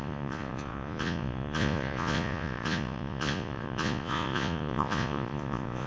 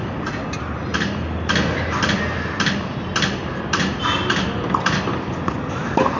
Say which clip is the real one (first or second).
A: second